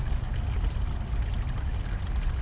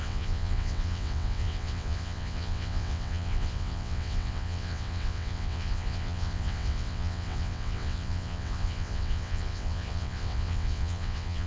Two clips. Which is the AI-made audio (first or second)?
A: second